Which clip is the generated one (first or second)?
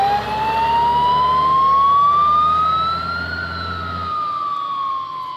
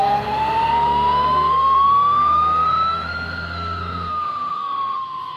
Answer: second